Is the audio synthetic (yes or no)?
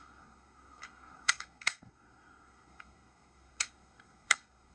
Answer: yes